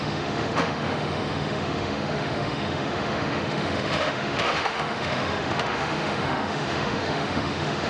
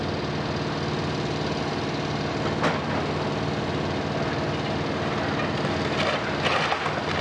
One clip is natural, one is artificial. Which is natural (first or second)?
second